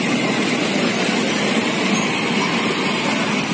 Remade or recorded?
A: recorded